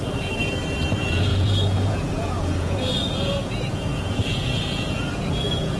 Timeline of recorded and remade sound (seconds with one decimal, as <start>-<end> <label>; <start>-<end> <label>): 0.0-0.4 remade; 0.4-0.9 recorded; 0.9-5.8 remade